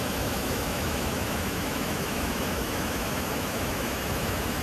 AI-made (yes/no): yes